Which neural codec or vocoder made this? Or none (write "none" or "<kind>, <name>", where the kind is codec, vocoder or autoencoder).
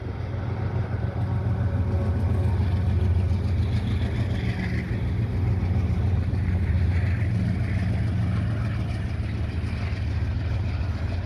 none